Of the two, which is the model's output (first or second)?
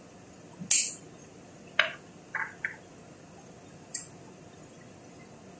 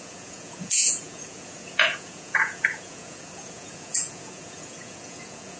second